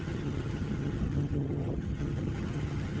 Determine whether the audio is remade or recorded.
remade